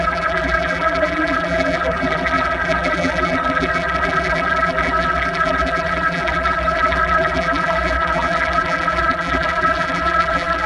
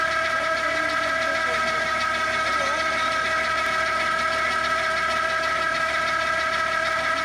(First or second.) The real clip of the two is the second